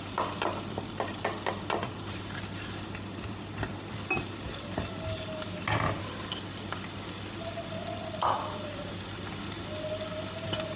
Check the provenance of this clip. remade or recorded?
recorded